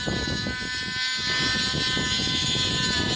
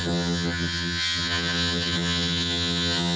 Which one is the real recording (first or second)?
first